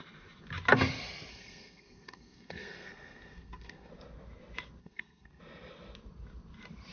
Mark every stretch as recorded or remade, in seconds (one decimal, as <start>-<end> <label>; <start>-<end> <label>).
0.0-1.3 recorded; 1.3-3.9 remade; 3.9-4.8 recorded; 4.8-5.4 remade; 5.4-6.9 recorded